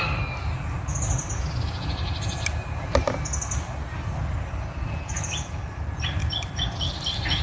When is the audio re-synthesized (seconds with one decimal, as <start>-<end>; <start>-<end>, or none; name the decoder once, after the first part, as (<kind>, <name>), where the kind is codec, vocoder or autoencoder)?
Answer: 4.8-5.3 (vocoder, Vocos)